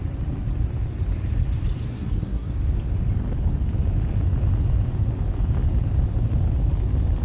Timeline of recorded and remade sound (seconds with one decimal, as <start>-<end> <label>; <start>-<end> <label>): 0.0-1.9 recorded; 1.9-2.5 remade; 2.5-7.2 recorded